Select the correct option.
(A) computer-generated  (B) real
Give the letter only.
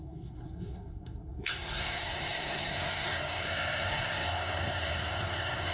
A